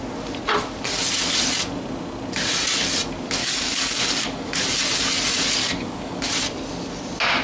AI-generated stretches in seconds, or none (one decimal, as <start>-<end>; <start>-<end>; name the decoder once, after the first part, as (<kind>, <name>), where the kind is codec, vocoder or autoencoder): 3.4-4.6 (codec, DAC); 5.6-6.2